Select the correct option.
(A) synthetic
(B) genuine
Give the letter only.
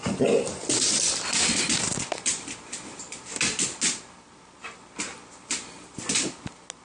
B